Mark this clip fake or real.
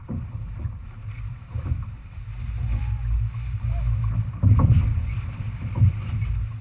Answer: real